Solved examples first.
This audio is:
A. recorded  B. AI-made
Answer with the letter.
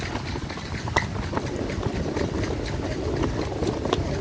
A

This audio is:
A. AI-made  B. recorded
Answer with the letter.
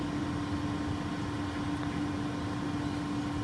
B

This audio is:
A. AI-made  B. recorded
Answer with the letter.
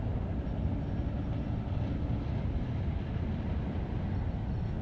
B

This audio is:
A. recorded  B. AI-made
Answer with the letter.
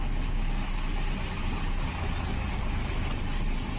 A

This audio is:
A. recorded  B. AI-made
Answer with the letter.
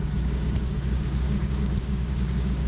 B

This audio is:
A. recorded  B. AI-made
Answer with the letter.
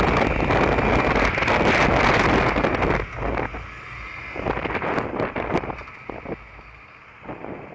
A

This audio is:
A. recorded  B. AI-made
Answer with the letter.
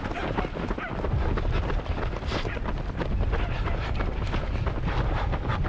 A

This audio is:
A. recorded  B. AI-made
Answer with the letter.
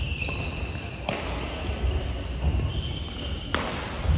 A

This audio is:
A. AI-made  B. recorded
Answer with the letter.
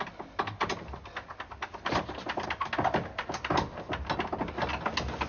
B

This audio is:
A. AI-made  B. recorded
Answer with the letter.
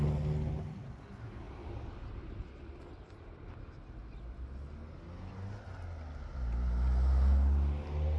B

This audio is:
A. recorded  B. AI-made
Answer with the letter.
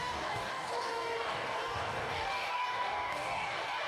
B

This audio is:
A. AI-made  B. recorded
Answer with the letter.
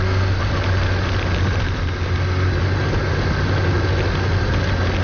B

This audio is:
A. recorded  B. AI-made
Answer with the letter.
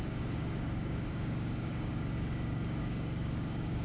B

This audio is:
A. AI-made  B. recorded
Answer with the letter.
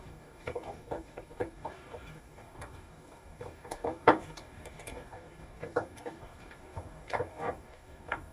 A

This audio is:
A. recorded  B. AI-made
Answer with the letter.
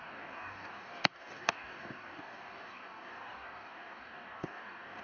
B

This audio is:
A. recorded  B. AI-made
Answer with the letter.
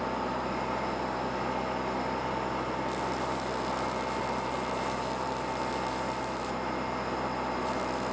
A